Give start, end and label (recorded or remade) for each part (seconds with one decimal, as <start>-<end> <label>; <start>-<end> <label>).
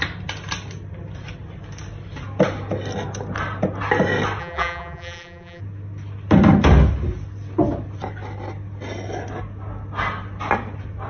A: 0.0-4.4 recorded; 4.4-5.6 remade; 5.6-11.1 recorded